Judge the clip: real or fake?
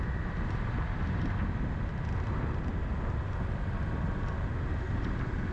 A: real